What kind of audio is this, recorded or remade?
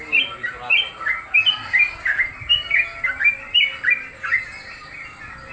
recorded